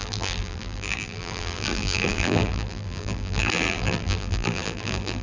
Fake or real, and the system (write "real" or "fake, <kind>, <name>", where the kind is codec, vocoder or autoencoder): fake, vocoder, BigVGAN v2